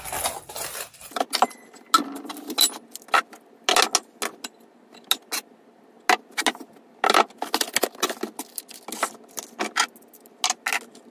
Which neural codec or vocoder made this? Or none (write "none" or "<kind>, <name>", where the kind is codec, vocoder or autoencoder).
none